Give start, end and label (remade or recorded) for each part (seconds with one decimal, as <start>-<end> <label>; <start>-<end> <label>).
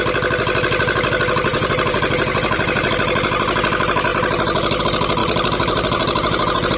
0.0-1.5 recorded; 1.5-2.9 remade; 2.9-5.2 recorded; 5.2-6.8 remade